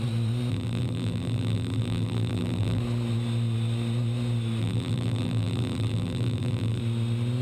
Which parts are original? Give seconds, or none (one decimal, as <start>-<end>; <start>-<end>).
0.0-0.5; 2.8-4.6; 6.8-7.4